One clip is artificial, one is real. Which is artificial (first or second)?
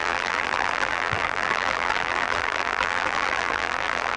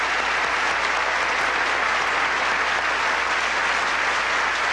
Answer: first